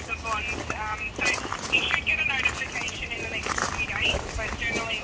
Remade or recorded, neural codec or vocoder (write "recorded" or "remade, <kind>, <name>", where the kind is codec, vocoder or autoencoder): recorded